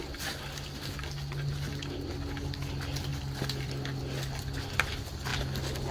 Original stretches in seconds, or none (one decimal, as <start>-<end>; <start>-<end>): 0.0-5.9